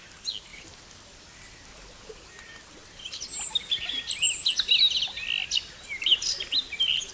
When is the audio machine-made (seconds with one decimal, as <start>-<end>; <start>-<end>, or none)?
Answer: none